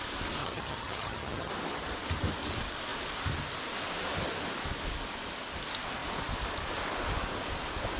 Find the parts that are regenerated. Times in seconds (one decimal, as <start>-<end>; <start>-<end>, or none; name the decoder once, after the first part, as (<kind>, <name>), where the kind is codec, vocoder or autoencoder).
0.4-1.5 (vocoder, HiFi-GAN)